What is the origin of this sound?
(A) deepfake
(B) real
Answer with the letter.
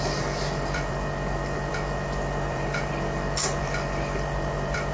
A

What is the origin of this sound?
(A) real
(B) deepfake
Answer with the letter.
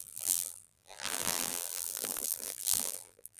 B